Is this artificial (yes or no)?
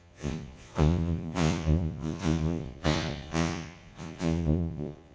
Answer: yes